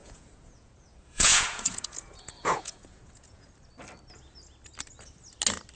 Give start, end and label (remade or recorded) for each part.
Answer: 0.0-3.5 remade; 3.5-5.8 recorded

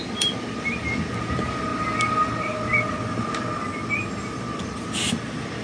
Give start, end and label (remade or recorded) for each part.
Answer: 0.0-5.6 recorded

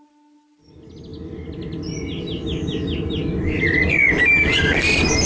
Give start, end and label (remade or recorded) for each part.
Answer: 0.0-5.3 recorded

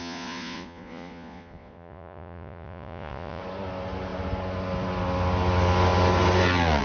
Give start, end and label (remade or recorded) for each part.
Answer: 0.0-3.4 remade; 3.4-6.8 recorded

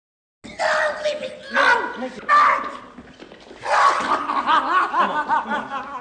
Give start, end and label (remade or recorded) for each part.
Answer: 0.0-6.0 recorded

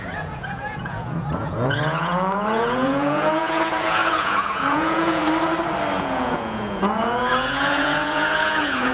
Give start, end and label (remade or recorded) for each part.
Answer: 0.0-5.2 remade; 5.2-6.0 recorded; 6.0-8.9 remade

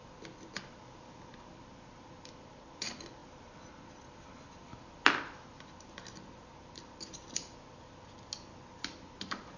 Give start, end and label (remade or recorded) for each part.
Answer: 0.0-9.6 recorded

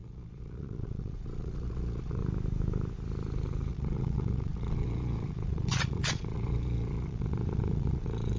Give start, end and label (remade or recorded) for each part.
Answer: 0.0-2.2 remade; 2.2-3.7 recorded; 3.7-8.4 remade